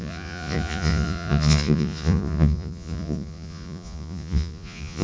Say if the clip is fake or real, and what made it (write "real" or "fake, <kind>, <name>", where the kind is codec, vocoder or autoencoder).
fake, vocoder, Vocos